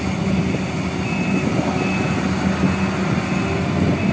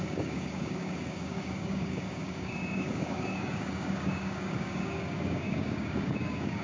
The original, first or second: first